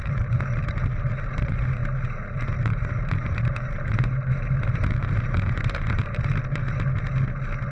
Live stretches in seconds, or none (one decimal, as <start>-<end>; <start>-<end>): 6.6-7.7